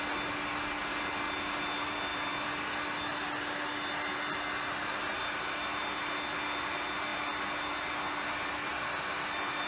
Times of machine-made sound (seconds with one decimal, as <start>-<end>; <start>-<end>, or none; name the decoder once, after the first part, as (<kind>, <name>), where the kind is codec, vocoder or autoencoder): none